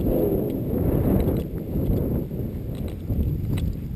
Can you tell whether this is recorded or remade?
recorded